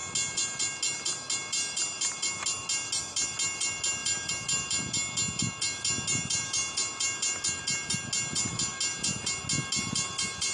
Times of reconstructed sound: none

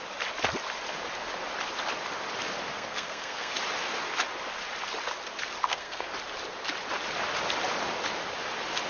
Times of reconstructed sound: 2.7-3.5; 5.6-6.1

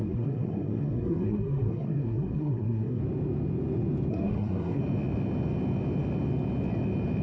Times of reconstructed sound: 0.0-3.0; 4.1-4.8